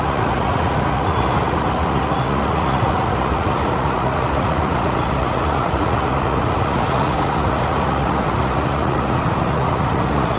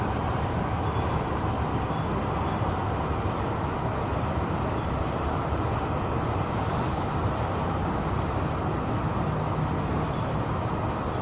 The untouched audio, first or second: second